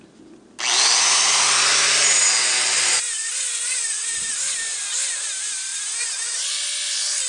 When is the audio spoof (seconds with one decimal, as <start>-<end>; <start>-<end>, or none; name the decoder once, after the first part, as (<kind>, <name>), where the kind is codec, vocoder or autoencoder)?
none